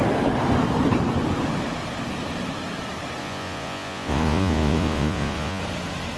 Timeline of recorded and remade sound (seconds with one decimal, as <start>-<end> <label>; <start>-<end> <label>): 0.0-3.2 recorded; 3.2-5.6 remade; 5.6-6.2 recorded